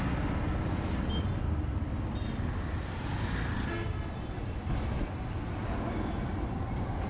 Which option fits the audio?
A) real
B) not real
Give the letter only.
A